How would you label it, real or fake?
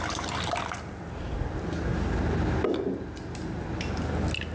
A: real